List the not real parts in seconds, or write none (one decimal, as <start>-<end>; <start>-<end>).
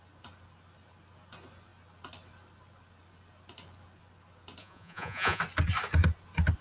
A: 4.6-5.4